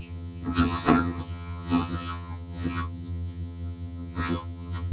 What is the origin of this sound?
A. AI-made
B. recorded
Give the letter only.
A